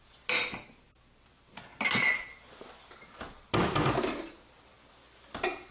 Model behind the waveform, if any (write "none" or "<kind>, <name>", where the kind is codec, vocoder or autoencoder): none